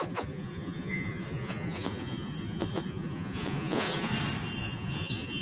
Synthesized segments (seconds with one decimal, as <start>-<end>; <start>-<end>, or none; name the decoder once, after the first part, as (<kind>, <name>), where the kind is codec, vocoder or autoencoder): 0.0-4.1 (vocoder, Vocos); 4.6-5.4